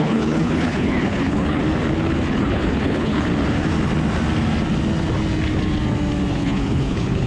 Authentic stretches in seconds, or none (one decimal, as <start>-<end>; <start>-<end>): 1.6-2.4; 3.3-6.3